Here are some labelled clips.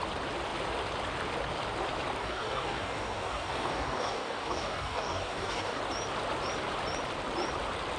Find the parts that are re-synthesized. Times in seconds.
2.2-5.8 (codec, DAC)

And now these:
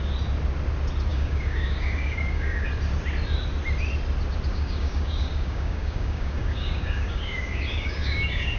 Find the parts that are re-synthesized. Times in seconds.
1.1-2.7 (codec, DAC); 4.5-8.6

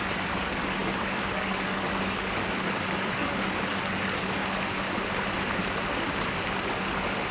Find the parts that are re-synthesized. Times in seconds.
0.0-4.4 (codec, DAC); 6.8-7.3